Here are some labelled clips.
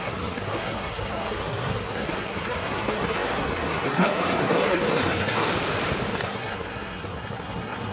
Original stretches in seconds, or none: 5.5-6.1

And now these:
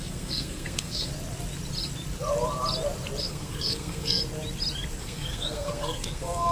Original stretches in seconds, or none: 1.1-3.2; 4.2-5.0

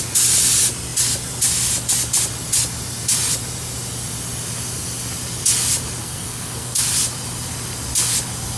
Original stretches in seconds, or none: 0.0-6.0; 6.8-8.6